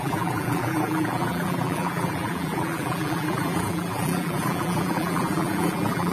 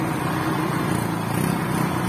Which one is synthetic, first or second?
first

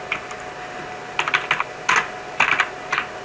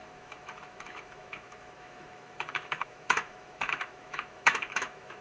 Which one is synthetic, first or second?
second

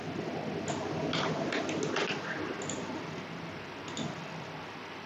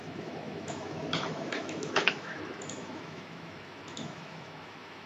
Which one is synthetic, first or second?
second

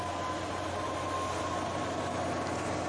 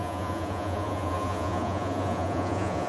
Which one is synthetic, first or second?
second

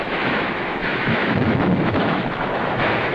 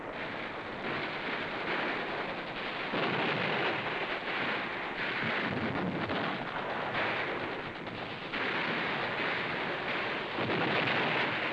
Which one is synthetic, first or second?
first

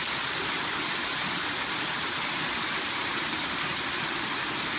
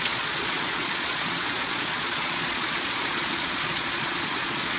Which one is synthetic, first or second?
second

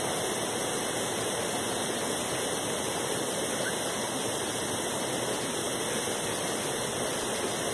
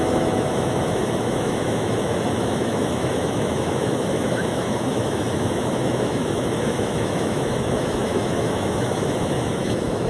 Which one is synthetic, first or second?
second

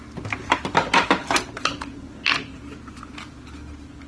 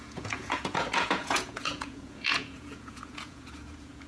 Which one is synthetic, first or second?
second